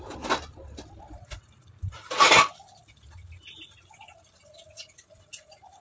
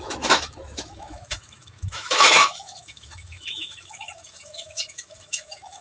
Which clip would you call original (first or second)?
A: first